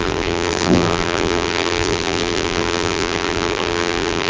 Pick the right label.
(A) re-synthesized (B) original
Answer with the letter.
A